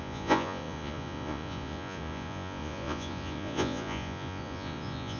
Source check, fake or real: fake